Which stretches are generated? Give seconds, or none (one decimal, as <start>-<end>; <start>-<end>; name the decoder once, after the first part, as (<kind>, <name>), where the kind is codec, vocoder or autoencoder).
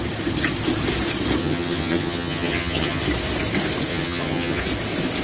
1.4-3.0 (vocoder, HiFi-GAN); 3.9-4.6